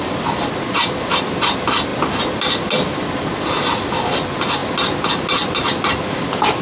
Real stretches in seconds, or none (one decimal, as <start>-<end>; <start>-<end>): 0.0-6.6